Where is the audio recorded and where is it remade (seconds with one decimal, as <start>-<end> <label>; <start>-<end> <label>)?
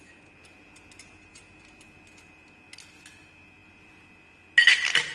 0.0-5.1 recorded